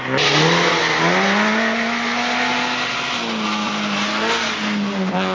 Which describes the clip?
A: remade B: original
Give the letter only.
B